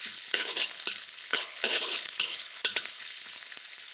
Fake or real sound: fake